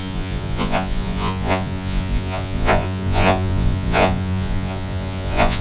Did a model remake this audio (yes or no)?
yes